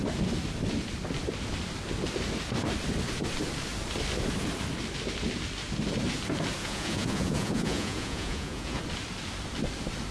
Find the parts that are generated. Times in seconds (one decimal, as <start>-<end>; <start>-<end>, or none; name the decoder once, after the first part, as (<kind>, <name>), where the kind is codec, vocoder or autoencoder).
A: 6.6-8.8 (vocoder, Vocos)